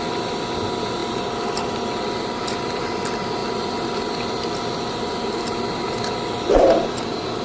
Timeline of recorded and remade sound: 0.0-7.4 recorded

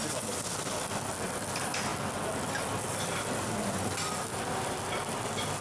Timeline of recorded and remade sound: 0.0-5.6 recorded

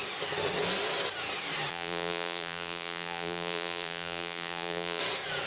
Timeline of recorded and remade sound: 0.0-1.7 recorded; 1.7-5.0 remade; 5.0-5.5 recorded

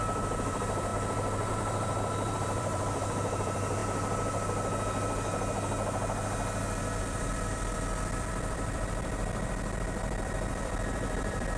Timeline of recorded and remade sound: 0.0-0.9 remade; 0.9-1.5 recorded; 1.5-3.8 remade; 3.8-7.0 recorded; 7.0-11.6 remade